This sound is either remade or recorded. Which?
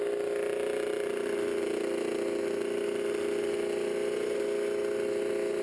recorded